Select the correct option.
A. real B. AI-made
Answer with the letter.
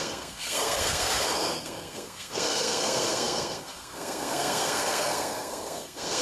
B